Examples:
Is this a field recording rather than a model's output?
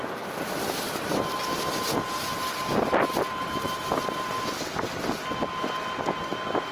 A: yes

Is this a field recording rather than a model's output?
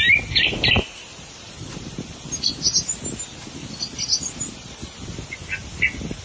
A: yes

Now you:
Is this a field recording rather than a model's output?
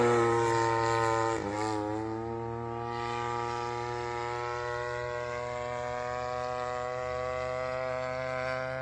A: yes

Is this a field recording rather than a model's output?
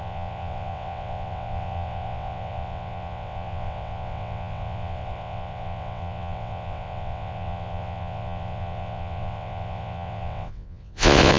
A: no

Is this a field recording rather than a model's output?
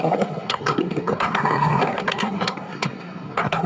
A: no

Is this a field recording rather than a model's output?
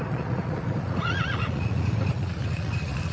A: no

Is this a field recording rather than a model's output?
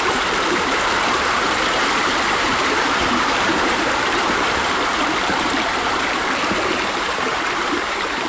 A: no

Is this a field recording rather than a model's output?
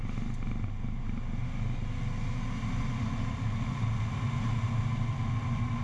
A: yes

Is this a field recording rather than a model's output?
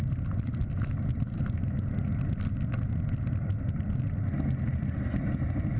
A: yes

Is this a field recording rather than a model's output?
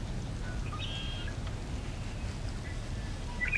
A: yes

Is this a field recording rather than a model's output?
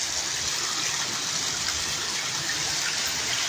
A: yes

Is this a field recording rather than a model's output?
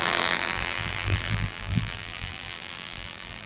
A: no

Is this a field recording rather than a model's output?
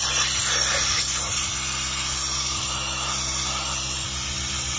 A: yes